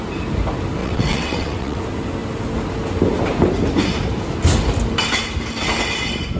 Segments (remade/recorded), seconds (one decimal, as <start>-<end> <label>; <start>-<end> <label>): 0.0-0.8 recorded; 0.8-1.8 remade; 1.8-6.4 recorded